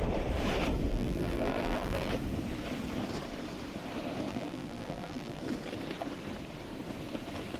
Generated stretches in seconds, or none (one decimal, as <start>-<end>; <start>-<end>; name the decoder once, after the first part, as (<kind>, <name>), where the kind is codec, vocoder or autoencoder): 0.9-2.1 (vocoder, BigVGAN v2); 4.3-5.4